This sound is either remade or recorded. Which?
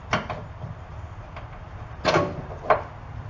recorded